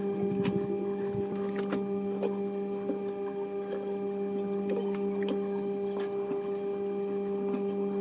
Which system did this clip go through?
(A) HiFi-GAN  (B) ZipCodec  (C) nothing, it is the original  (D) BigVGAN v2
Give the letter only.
C